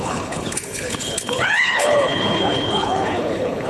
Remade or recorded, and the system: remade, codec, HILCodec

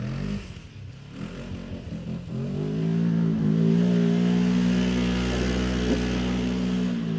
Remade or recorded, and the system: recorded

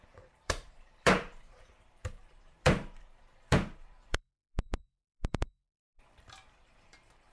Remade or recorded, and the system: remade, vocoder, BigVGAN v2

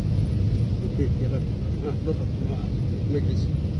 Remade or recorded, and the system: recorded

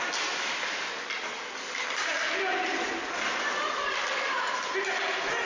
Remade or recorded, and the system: recorded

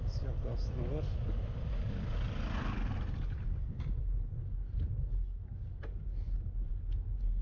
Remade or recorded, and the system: recorded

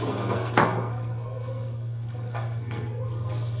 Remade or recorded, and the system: remade, codec, SNAC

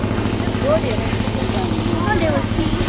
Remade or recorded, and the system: recorded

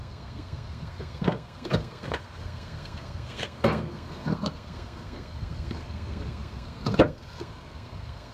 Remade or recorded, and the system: remade, codec, SNAC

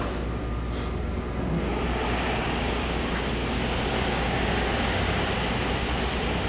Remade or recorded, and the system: recorded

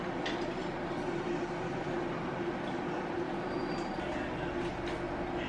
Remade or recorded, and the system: recorded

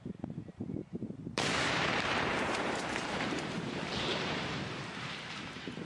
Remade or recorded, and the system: remade, vocoder, BigVGAN v2